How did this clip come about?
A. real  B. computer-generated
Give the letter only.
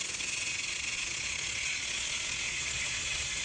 B